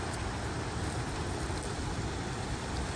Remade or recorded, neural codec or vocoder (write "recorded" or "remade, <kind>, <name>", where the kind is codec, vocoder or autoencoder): remade, vocoder, BigVGAN v2